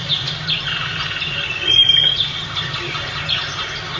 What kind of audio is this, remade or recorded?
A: recorded